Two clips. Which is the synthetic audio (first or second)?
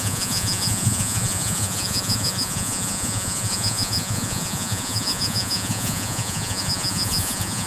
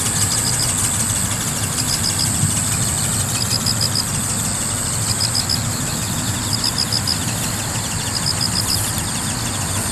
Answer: first